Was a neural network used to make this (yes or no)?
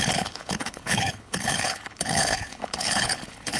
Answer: yes